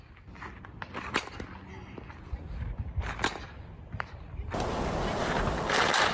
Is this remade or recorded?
recorded